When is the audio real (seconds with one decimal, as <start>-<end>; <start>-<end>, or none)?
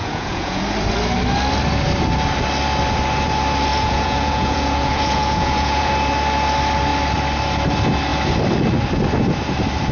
0.6-3.7; 5.9-9.9